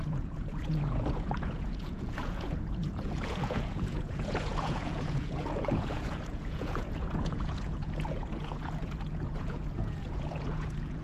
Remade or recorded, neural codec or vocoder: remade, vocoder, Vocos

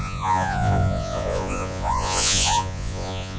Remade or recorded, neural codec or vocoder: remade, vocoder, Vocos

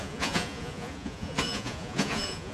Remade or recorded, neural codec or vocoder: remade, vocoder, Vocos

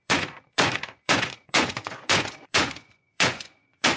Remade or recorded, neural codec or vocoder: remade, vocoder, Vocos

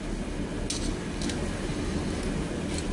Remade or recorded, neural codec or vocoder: recorded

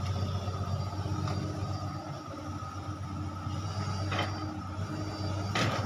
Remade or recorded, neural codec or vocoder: recorded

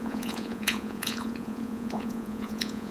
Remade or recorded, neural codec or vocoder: remade, vocoder, Vocos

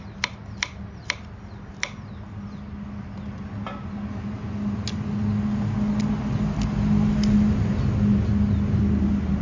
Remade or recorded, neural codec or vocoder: recorded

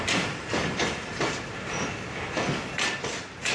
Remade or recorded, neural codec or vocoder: recorded